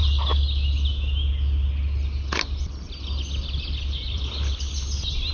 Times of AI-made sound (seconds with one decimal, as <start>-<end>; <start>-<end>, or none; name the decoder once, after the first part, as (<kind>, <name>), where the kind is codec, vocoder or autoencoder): 4.0-5.3 (vocoder, BigVGAN v2)